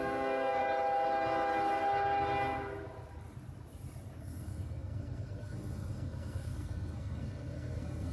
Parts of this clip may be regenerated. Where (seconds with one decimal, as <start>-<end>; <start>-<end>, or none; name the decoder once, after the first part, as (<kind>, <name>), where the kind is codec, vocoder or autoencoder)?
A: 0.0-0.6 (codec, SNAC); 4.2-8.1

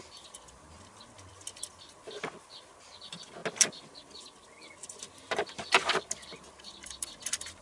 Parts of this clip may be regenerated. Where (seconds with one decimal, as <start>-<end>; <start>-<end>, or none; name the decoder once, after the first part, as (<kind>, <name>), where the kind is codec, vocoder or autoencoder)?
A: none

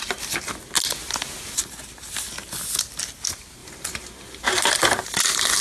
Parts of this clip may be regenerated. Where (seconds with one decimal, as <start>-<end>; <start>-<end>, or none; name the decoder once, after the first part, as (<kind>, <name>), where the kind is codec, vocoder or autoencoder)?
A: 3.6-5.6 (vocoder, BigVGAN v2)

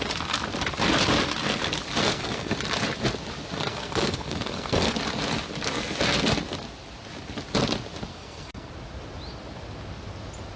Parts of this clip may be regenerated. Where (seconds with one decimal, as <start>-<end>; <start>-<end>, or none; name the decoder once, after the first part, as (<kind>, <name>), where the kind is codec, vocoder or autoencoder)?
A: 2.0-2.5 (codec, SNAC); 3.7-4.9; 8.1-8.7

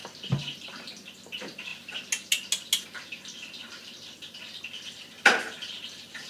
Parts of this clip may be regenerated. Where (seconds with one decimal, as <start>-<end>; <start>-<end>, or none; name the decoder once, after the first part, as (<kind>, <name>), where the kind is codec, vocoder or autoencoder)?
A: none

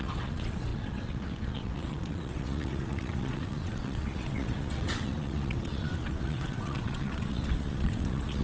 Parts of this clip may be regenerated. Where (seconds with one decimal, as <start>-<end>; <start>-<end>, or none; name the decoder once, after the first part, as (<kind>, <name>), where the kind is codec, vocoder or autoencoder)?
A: 0.0-8.4 (vocoder, WaveNeXt)

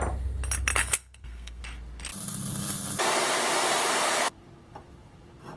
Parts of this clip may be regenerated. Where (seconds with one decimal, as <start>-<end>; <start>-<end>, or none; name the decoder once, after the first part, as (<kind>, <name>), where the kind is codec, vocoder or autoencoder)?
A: 0.8-1.6 (codec, SNAC)

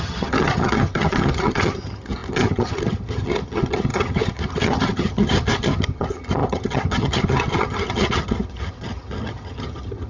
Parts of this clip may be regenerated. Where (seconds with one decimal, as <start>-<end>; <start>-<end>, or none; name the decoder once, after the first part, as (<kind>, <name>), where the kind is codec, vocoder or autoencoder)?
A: 0.0-10.1 (vocoder, HiFi-GAN)